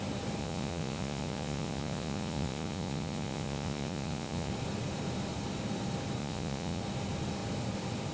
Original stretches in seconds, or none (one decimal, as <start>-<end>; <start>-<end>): 0.0-0.4; 4.5-6.2; 6.8-8.1